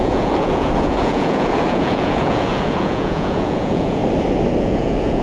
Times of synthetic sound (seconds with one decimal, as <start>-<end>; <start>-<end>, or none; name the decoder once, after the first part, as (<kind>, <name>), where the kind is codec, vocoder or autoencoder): 0.0-4.0 (vocoder, Vocos); 4.6-5.2